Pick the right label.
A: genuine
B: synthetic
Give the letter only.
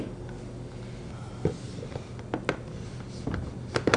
A